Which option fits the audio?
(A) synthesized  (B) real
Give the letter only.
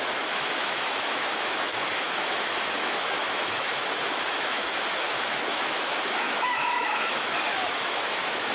A